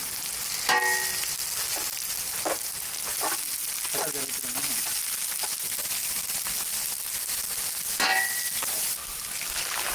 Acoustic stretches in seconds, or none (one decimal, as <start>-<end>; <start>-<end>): 0.0-9.0; 9.5-9.9